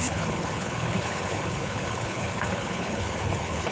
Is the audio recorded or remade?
remade